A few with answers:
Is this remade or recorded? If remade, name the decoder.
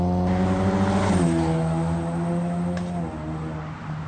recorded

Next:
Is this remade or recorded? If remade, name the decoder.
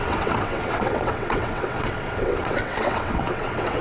remade, vocoder, WaveNeXt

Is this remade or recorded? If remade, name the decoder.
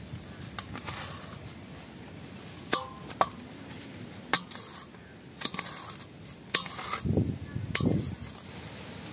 recorded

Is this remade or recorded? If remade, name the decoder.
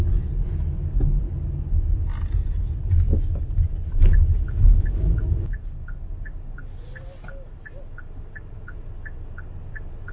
recorded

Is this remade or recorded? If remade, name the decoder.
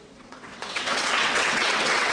remade, vocoder, WaveNeXt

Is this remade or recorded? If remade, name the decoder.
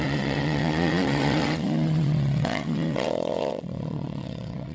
remade, vocoder, WaveNeXt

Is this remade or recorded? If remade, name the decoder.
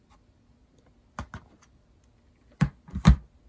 recorded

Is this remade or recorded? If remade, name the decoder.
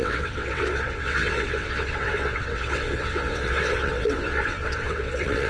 remade, vocoder, WaveNeXt